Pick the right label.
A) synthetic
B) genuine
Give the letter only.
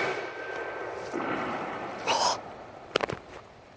A